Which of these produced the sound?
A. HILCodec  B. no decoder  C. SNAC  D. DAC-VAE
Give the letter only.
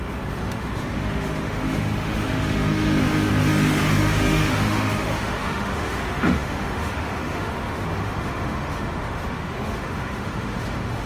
D